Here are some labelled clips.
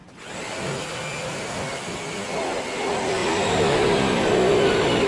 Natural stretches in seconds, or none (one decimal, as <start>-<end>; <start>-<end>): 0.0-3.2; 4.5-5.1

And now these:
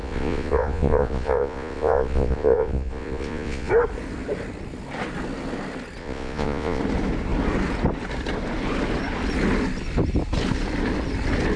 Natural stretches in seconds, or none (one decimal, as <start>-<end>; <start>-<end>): 3.7-6.0; 6.8-11.6

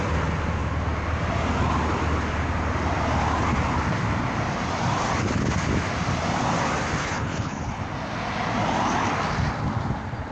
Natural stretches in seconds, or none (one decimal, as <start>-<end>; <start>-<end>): 0.0-7.0; 7.8-10.3

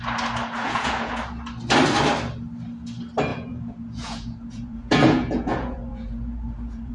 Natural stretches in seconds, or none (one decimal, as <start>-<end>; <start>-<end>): 0.0-0.6; 1.2-3.3

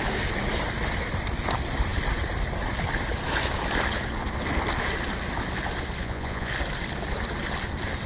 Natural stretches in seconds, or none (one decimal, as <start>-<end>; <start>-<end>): 0.0-6.0; 6.5-8.1

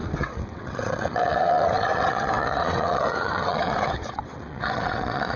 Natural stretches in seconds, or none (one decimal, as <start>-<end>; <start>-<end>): none

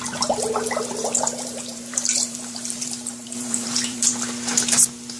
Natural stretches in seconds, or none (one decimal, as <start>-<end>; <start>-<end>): 0.0-1.0; 4.1-5.2

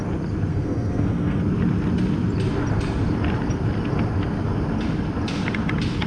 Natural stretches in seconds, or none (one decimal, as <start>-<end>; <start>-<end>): 0.0-0.5; 1.4-6.1